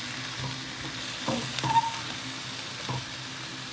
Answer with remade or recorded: recorded